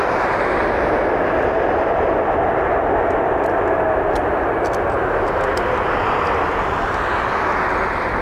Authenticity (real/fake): real